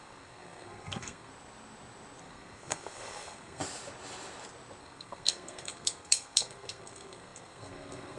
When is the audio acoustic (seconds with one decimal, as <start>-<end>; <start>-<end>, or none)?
1.3-2.2; 3.6-4.8